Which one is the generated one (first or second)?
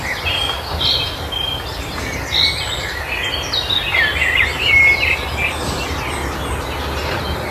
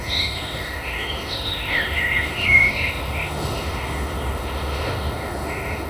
second